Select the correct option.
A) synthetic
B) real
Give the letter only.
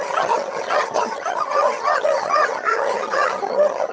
A